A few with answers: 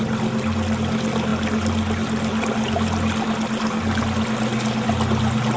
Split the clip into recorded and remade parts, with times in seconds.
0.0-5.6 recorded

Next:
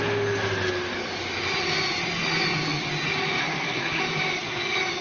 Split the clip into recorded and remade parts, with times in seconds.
0.0-3.4 recorded; 3.4-4.0 remade; 4.0-5.0 recorded

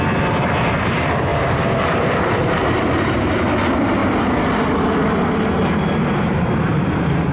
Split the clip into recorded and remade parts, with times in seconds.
0.0-1.3 recorded; 1.3-3.1 remade; 3.1-7.3 recorded

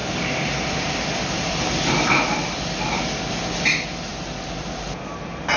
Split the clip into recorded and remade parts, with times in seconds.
0.0-5.6 recorded

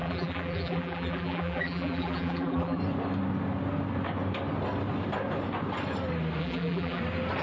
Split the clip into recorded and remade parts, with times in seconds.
0.0-2.8 remade; 2.8-6.4 recorded; 6.4-7.0 remade; 7.0-7.4 recorded

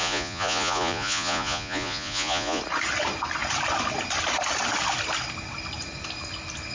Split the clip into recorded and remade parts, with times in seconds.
0.0-2.6 remade; 2.6-6.7 recorded

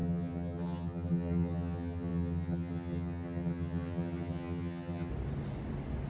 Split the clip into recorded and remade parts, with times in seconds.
0.0-5.1 remade; 5.1-6.1 recorded

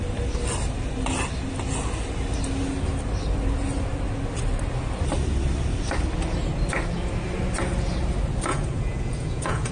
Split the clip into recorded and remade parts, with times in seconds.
0.0-8.5 recorded; 8.5-9.7 remade